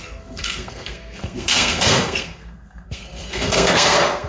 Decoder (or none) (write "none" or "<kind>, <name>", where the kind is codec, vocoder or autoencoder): codec, SNAC